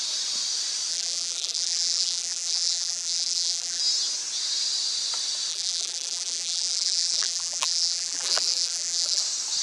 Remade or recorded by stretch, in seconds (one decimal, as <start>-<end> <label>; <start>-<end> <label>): 0.0-0.9 recorded; 0.9-3.8 remade; 3.8-5.5 recorded; 5.5-9.2 remade; 9.2-9.6 recorded